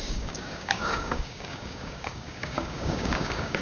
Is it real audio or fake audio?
fake